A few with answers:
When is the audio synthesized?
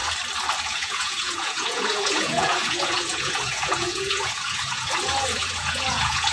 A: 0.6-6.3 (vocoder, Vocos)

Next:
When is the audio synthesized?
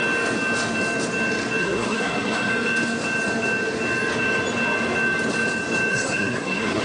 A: 1.6-2.5 (codec, SNAC); 5.9-6.8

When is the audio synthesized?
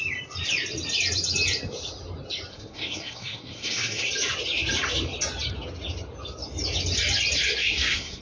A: 2.5-4.1 (codec, SNAC); 7.6-8.2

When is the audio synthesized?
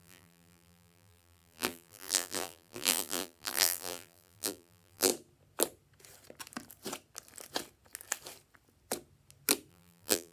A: 0.0-5.1 (vocoder, BigVGAN v2); 9.7-10.3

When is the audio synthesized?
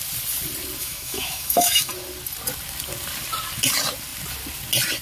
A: 0.8-1.9 (autoencoder, DAC-VAE)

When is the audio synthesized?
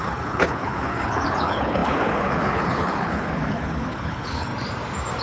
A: 0.0-4.5 (codec, HILCodec)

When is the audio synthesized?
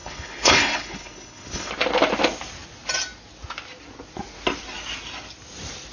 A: 0.0-1.7 (codec, HILCodec)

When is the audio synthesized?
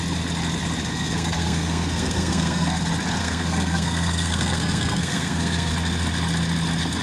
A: 0.9-2.8 (codec, SNAC); 3.2-5.7